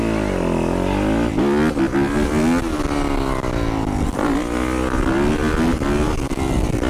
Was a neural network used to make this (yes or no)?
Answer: no